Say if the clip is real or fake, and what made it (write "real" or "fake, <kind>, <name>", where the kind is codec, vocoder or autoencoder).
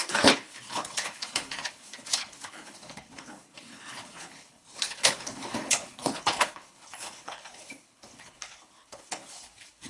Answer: fake, codec, HILCodec